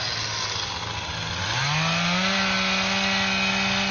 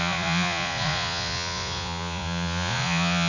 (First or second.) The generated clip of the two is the second